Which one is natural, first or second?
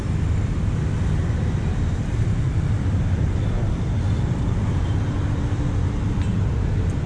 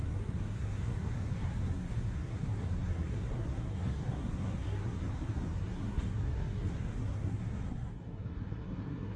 first